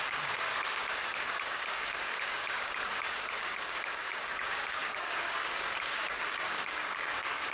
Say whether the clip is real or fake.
fake